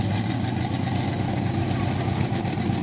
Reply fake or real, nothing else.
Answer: real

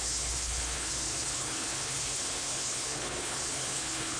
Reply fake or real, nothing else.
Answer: fake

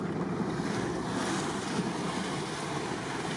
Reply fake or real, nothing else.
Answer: real